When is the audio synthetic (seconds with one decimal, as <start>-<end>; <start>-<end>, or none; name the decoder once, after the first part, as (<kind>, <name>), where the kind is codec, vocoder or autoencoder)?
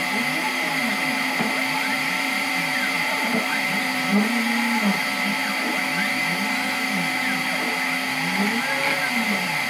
0.0-0.8 (vocoder, BigVGAN v2); 1.8-5.4; 8.6-9.7